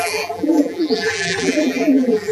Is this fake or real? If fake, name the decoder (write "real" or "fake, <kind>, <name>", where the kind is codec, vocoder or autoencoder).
fake, vocoder, BigVGAN v2